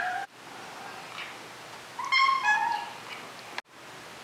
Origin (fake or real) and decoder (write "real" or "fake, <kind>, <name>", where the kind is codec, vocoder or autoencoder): real